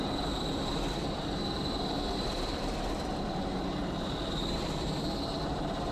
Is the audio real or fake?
fake